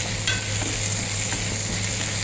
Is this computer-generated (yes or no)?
no